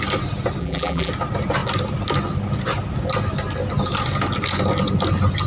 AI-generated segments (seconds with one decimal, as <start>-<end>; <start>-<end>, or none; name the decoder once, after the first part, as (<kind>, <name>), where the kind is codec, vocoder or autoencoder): 0.6-1.1 (vocoder, BigVGAN v2)